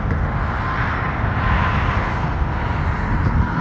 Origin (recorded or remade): recorded